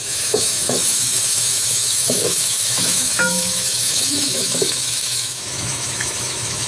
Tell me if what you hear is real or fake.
fake